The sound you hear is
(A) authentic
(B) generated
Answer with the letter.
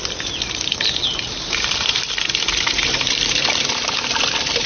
B